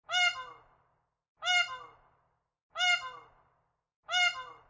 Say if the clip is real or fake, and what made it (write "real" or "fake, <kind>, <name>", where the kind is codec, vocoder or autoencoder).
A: real